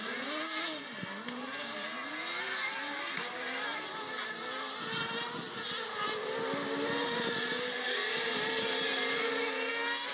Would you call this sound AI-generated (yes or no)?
no